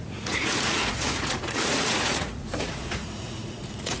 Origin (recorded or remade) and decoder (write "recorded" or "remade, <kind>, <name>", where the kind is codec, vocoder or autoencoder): remade, vocoder, Vocos